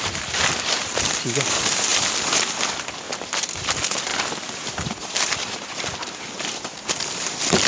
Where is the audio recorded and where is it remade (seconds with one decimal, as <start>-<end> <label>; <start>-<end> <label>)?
0.0-7.7 recorded